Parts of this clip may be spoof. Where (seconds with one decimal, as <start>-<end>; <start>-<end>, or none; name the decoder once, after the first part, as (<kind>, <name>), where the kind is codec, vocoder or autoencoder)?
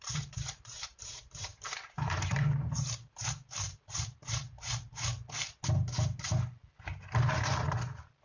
0.0-5.1 (vocoder, BigVGAN v2); 7.3-8.2